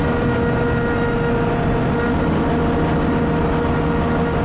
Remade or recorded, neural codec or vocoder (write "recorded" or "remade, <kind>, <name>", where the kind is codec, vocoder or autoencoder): recorded